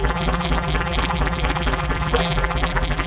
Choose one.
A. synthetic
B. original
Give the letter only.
A